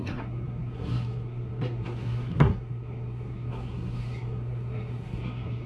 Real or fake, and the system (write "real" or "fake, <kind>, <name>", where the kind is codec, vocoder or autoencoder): fake, codec, SNAC